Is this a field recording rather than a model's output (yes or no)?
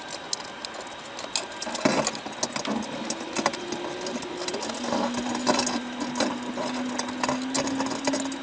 yes